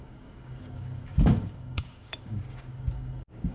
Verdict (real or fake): fake